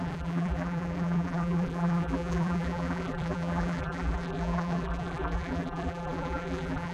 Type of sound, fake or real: fake